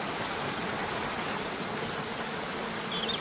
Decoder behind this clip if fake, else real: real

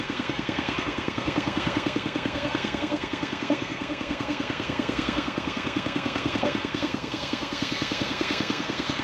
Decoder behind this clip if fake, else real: fake, codec, SNAC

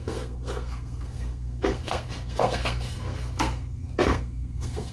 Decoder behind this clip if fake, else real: fake, codec, SNAC